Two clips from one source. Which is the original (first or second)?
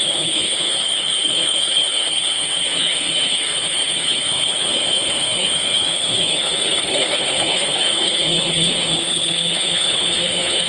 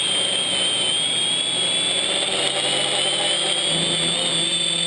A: second